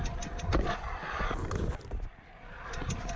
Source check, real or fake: real